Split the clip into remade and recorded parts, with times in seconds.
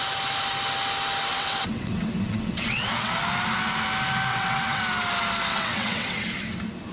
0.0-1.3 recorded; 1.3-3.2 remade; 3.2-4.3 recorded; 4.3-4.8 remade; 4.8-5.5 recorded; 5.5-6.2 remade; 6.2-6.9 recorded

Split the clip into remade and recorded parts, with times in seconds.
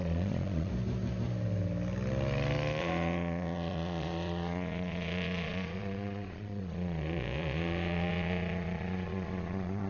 0.0-0.7 remade; 0.7-2.8 recorded; 2.8-9.9 remade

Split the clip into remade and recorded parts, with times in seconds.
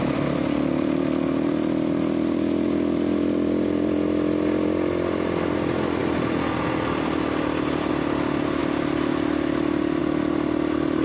0.0-11.0 recorded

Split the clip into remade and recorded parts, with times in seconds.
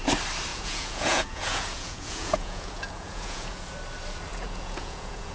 0.0-0.5 recorded; 0.5-3.7 remade; 3.7-4.3 recorded; 4.3-5.3 remade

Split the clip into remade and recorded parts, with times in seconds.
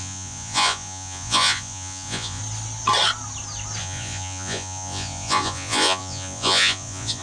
0.0-2.4 remade; 2.4-3.8 recorded; 3.8-7.2 remade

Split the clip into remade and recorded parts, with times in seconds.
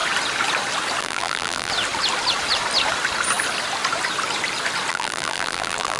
0.0-1.0 recorded; 1.0-1.7 remade; 1.7-4.9 recorded; 4.9-6.0 remade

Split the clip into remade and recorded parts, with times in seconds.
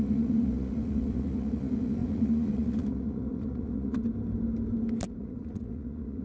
0.0-4.0 remade; 4.0-5.2 recorded; 5.2-6.2 remade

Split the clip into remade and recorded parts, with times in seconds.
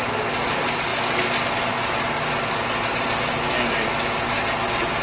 0.0-5.0 recorded